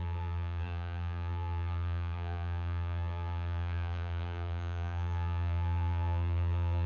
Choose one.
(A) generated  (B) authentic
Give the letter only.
A